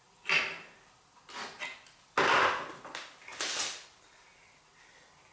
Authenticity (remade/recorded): recorded